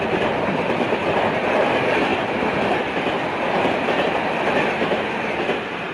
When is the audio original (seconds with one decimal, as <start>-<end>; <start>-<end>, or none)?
2.1-3.8